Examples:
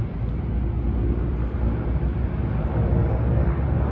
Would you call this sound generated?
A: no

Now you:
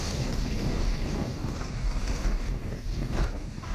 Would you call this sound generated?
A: yes